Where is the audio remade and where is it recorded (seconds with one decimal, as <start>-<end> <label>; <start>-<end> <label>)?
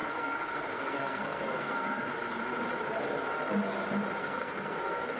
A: 0.0-2.1 remade; 2.1-4.2 recorded; 4.2-5.2 remade